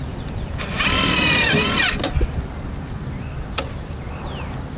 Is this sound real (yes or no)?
no